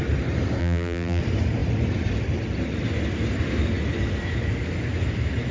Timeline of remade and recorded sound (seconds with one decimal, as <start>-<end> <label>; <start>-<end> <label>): 0.0-0.6 recorded; 0.6-1.2 remade; 1.2-5.5 recorded